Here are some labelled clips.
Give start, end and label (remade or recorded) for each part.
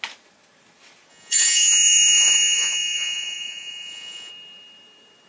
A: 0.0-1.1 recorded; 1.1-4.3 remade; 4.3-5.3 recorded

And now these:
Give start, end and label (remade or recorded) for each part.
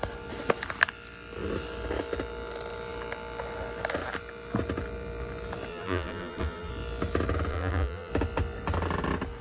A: 0.0-5.7 recorded; 5.7-6.7 remade; 6.7-7.5 recorded; 7.5-8.1 remade; 8.1-9.4 recorded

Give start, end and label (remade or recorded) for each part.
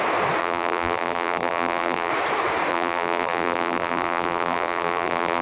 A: 0.0-0.4 recorded; 0.4-2.1 remade; 2.1-2.7 recorded; 2.7-5.4 remade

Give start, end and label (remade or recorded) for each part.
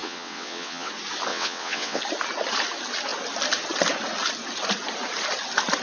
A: 0.0-0.9 remade; 0.9-1.3 recorded; 1.3-2.0 remade; 2.0-5.8 recorded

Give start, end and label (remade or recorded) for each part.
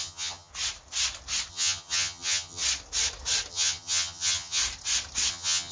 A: 0.0-0.5 remade; 0.5-1.5 recorded; 1.5-2.6 remade; 2.6-3.5 recorded; 3.5-4.6 remade; 4.6-5.3 recorded; 5.3-5.7 remade